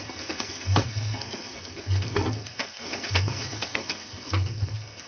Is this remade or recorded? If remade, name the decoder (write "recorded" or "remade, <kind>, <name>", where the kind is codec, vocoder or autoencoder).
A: remade, codec, SNAC